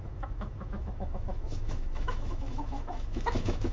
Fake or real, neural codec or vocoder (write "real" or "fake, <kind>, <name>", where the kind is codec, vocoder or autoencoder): fake, autoencoder, DAC-VAE